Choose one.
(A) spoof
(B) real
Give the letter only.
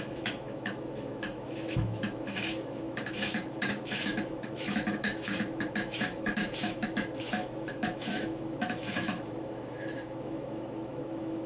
A